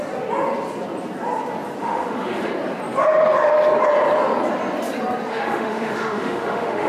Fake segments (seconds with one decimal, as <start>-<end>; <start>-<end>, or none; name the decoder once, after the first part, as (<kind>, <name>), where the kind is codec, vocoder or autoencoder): 1.8-2.5 (autoencoder, DAC-VAE); 5.3-6.9